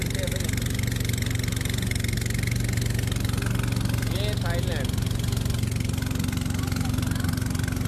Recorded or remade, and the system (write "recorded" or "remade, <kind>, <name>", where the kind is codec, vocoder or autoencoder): recorded